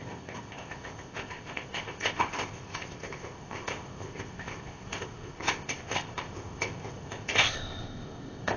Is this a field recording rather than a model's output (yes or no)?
no